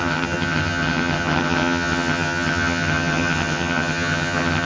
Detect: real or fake fake